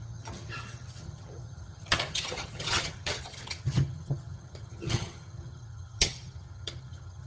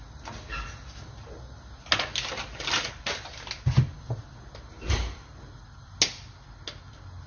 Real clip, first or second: second